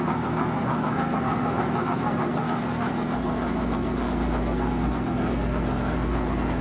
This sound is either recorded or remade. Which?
remade